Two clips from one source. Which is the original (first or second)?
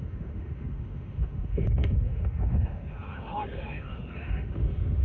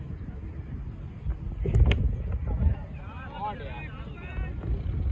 second